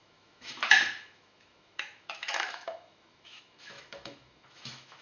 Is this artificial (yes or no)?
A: yes